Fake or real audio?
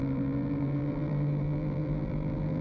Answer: fake